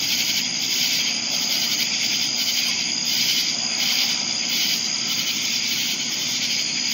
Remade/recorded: recorded